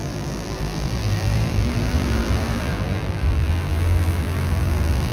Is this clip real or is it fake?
fake